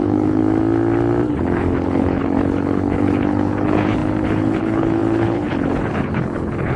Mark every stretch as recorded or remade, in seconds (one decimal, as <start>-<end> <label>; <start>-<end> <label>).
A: 0.0-0.4 remade; 0.4-1.3 recorded; 1.3-6.8 remade